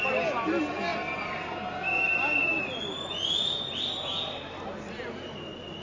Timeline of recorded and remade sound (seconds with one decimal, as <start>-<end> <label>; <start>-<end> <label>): 0.0-5.8 recorded